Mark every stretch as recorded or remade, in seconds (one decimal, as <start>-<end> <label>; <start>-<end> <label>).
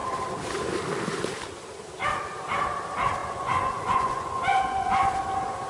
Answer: 0.0-3.2 recorded; 3.2-5.1 remade; 5.1-5.7 recorded